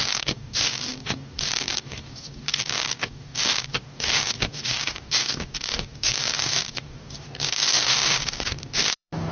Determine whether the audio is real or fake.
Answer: fake